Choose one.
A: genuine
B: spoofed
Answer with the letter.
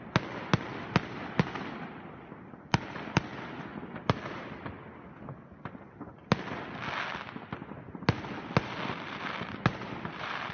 A